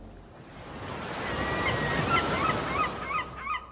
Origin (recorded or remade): recorded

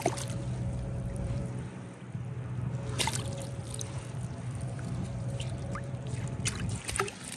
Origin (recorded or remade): remade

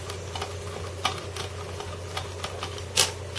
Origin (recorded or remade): recorded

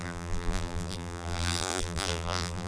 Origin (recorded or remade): remade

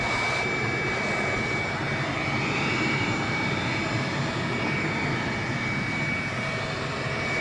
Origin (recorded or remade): recorded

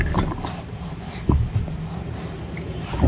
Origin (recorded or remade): remade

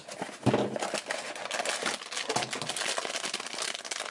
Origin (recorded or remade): recorded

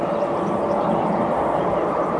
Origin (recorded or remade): recorded